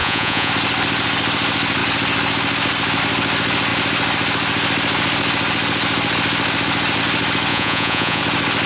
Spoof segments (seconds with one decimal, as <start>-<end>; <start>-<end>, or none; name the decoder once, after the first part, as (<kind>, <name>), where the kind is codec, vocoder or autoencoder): 0.0-0.5 (vocoder, Vocos); 7.5-8.2